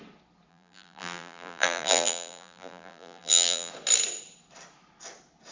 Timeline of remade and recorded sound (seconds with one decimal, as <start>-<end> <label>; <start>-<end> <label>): 0.0-0.5 recorded; 0.5-3.7 remade; 3.7-5.5 recorded